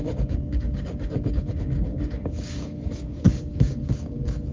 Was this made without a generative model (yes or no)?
no